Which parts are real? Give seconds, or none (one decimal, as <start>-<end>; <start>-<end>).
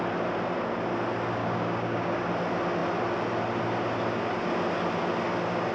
0.0-1.4; 2.2-5.7